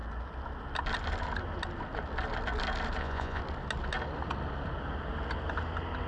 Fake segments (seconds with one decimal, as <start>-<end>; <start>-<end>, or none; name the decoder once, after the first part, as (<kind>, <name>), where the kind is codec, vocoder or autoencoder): 3.0-3.4 (vocoder, Vocos)